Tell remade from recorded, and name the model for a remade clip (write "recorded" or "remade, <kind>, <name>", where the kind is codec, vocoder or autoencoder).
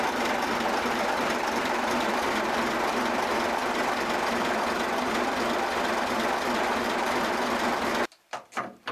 remade, vocoder, BigVGAN v2